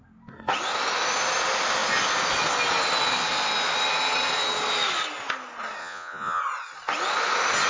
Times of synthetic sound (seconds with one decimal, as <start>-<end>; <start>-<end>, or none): 5.8-6.4